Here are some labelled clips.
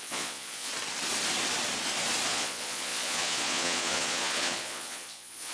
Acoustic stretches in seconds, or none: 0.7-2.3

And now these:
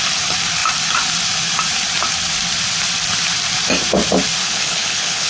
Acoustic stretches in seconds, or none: 0.0-4.4

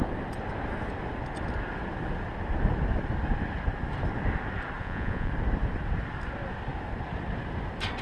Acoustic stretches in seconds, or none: 0.0-4.8; 5.3-8.0

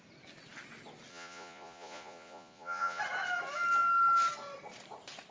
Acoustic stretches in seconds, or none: 0.0-1.1; 3.0-5.3

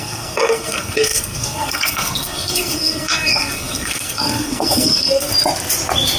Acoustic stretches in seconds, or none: 5.3-6.2